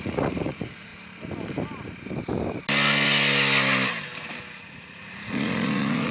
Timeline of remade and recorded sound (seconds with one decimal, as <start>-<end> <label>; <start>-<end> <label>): 0.0-0.9 remade; 0.9-4.6 recorded; 4.6-6.1 remade